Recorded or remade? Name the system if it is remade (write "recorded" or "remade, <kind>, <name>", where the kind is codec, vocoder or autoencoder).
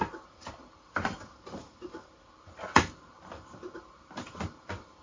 remade, vocoder, BigVGAN v2